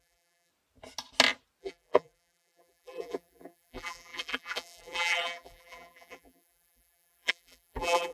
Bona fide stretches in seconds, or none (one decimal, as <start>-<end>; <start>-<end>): 0.5-1.6